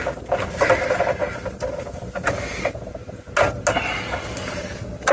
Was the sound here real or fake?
real